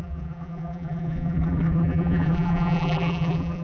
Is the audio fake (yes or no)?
yes